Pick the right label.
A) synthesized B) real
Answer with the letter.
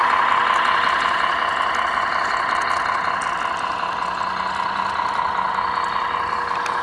B